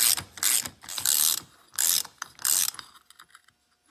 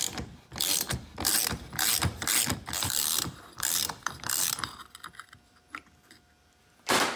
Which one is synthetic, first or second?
second